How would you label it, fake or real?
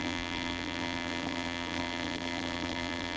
fake